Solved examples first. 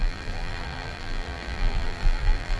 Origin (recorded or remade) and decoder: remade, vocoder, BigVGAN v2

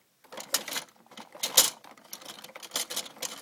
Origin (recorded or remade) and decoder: recorded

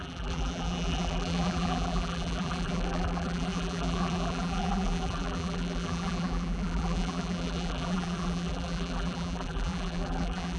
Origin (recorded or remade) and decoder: remade, vocoder, BigVGAN v2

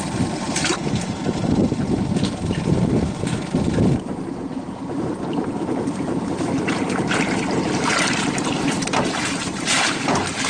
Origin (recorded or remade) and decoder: remade, vocoder, BigVGAN v2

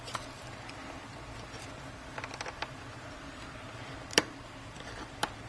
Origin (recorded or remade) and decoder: remade, vocoder, BigVGAN v2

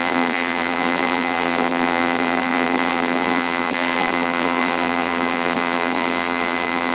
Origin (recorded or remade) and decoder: remade, vocoder, BigVGAN v2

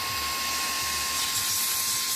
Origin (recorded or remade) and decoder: recorded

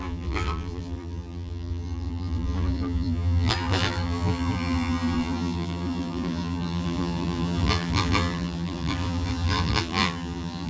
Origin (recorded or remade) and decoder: remade, vocoder, BigVGAN v2